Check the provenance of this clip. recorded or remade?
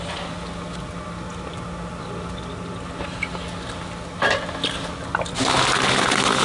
recorded